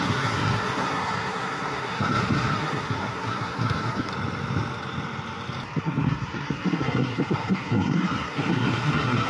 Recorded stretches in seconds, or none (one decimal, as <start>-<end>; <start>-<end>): 4.1-5.8